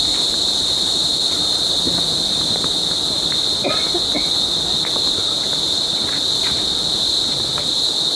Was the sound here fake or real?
real